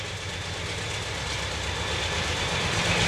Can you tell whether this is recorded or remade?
recorded